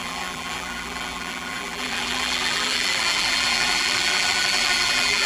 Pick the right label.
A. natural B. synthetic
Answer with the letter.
B